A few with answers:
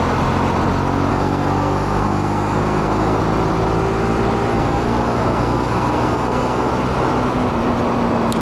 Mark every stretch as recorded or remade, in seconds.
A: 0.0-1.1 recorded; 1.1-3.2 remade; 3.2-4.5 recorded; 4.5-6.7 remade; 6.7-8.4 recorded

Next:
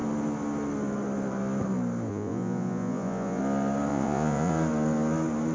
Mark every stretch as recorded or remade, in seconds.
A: 0.0-2.1 recorded; 2.1-3.4 remade; 3.4-3.9 recorded; 3.9-4.5 remade; 4.5-5.5 recorded

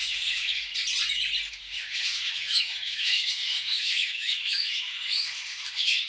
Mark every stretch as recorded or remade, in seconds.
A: 0.0-0.7 remade; 0.7-1.5 recorded; 1.5-6.1 remade

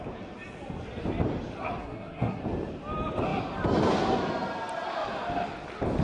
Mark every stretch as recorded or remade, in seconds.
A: 0.0-1.8 recorded; 1.8-2.4 remade; 2.4-6.0 recorded

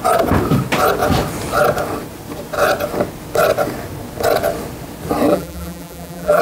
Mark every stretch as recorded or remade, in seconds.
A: 0.0-5.3 recorded; 5.3-6.4 remade